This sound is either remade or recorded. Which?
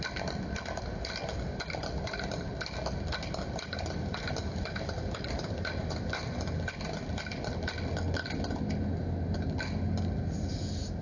recorded